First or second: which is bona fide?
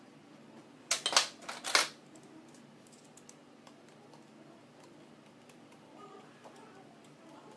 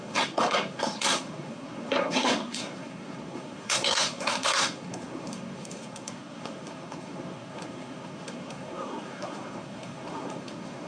first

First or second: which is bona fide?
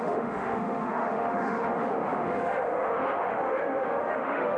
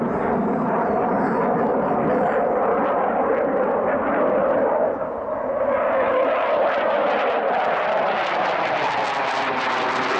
second